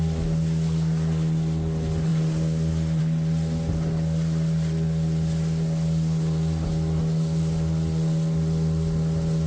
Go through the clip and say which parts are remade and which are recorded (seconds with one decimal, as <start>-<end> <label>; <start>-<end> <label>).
0.0-9.5 recorded